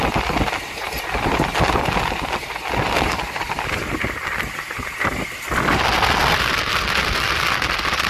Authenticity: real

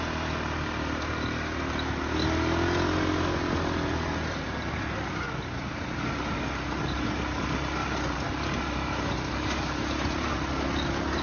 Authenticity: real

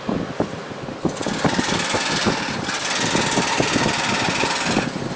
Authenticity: real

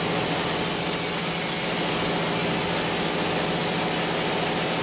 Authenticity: real